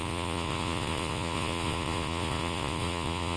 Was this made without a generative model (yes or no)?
no